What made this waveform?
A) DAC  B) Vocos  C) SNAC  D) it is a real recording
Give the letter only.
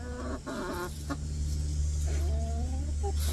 D